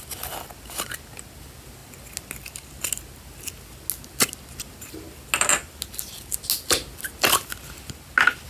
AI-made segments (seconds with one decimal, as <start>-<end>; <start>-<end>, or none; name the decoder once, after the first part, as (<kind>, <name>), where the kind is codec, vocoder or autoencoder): none